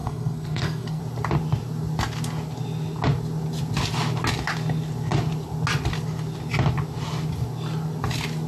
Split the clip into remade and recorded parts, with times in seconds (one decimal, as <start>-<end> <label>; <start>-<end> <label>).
0.0-1.0 remade; 1.0-8.5 recorded